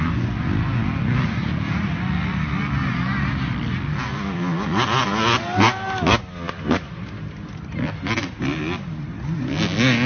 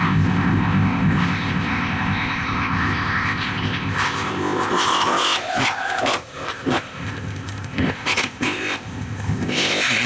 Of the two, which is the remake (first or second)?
second